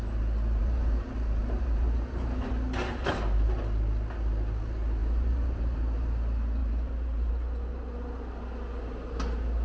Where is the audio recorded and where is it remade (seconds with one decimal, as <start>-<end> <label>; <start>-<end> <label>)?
0.0-0.6 recorded; 0.6-2.5 remade; 2.5-5.0 recorded; 5.0-6.1 remade; 6.1-6.6 recorded; 6.6-7.3 remade; 7.3-9.6 recorded